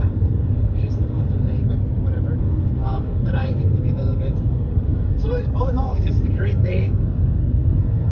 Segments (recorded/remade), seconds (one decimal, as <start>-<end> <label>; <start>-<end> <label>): 0.0-1.8 remade; 1.8-2.4 recorded; 2.4-8.1 remade